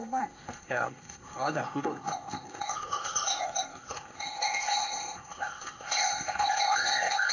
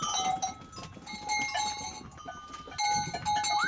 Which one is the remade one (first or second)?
first